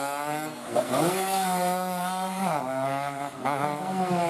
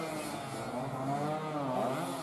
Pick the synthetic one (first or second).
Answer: first